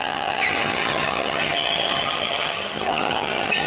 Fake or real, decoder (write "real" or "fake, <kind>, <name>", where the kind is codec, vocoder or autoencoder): fake, vocoder, HiFi-GAN